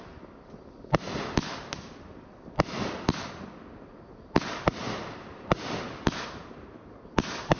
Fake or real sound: real